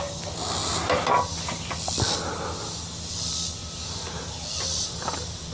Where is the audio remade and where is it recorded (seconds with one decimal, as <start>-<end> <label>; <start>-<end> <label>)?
0.0-3.6 recorded; 3.6-4.2 remade; 4.2-5.5 recorded